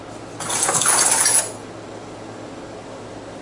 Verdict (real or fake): real